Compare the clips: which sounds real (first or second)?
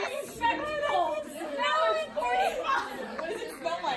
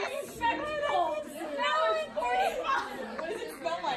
second